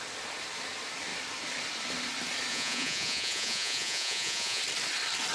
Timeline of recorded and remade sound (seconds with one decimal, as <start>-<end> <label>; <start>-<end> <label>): 0.0-2.5 recorded; 2.5-4.6 remade; 4.6-5.3 recorded